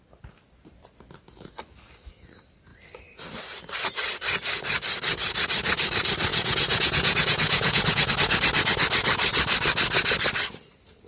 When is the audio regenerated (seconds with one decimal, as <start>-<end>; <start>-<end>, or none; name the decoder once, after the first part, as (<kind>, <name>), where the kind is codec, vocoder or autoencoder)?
6.3-8.1 (vocoder, Vocos)